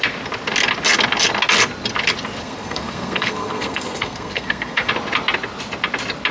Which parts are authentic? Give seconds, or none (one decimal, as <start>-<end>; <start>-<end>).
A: 0.0-2.4; 4.9-6.3